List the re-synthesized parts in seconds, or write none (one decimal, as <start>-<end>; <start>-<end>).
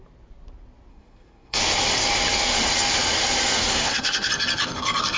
0.9-1.6; 3.7-4.3